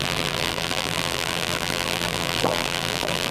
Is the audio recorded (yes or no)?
no